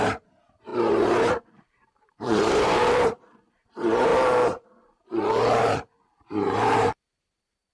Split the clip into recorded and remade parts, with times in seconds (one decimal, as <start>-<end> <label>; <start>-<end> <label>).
0.0-4.1 remade; 4.1-6.2 recorded; 6.2-7.7 remade